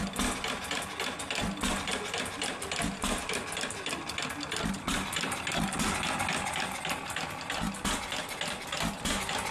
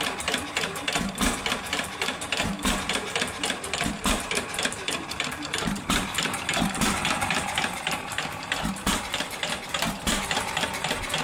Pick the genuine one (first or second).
first